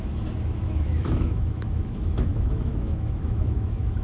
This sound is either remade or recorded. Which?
remade